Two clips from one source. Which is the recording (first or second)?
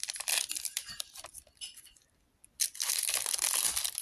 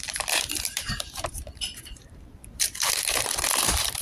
first